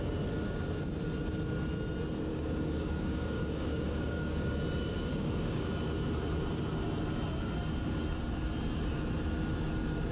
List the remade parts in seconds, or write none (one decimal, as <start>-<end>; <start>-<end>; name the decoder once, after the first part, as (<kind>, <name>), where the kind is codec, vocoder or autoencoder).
2.3-4.5 (codec, DAC); 5.1-5.7